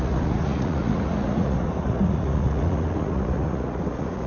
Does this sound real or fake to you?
fake